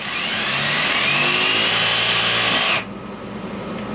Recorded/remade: recorded